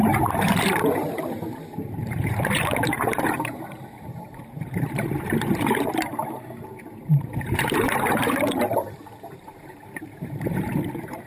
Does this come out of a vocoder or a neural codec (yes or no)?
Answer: yes